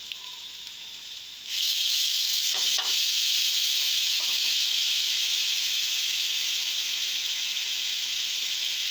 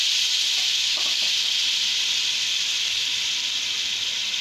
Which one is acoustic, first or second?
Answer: second